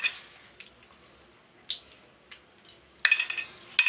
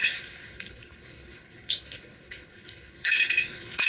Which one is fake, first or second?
second